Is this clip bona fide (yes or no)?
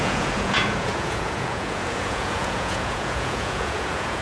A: no